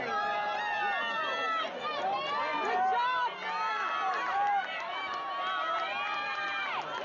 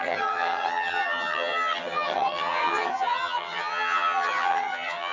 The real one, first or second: first